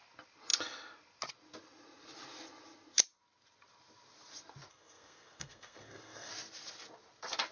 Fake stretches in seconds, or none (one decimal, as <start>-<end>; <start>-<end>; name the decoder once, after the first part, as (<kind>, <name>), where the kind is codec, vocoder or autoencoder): 4.7-6.3 (codec, SNAC)